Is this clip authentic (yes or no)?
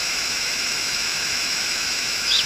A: no